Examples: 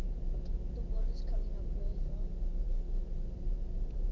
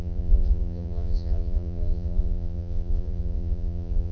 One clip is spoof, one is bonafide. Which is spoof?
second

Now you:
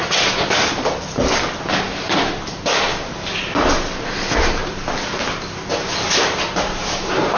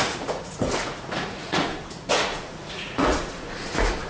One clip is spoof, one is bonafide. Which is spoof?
second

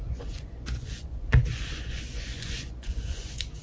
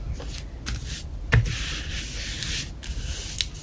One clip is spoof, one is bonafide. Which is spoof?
first